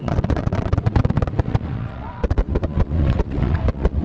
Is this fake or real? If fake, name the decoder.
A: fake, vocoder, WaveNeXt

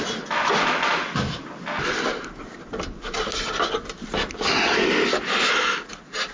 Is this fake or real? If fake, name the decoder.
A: real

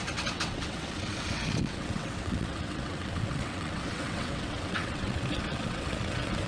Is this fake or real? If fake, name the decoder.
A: fake, vocoder, WaveNeXt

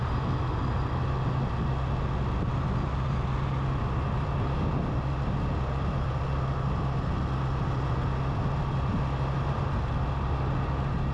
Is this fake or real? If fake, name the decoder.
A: real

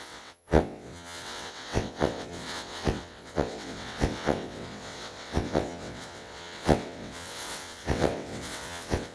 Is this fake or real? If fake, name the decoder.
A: fake, vocoder, WaveNeXt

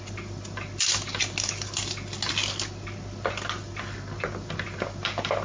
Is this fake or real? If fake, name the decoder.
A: real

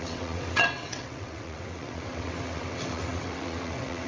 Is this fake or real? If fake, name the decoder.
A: fake, vocoder, WaveNeXt